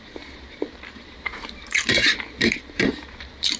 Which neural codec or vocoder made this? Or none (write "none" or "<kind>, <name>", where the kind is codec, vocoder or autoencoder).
vocoder, BigVGAN v2